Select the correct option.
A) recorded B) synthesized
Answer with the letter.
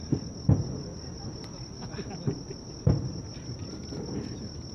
A